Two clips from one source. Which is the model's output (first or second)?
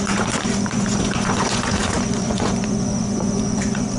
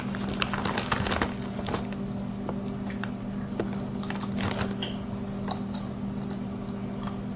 first